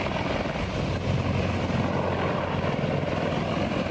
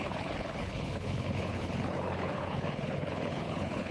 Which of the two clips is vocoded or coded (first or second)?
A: second